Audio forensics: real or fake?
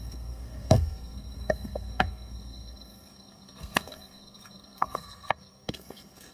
fake